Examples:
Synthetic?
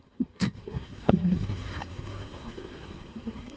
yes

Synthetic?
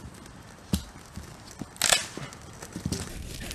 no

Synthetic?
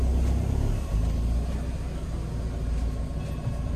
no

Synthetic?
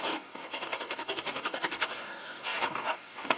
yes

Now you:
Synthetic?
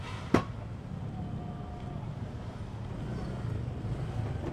no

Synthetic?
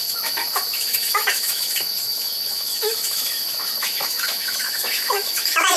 yes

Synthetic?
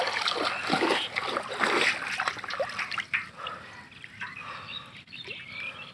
no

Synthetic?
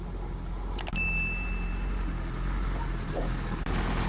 no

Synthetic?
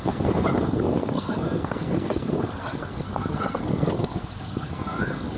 yes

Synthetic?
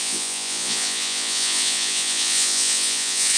yes